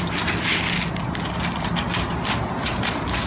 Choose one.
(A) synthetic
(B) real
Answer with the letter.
B